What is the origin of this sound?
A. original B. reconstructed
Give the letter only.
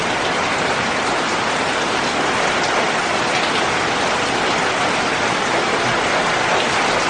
A